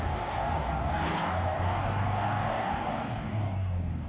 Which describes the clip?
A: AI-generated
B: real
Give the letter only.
A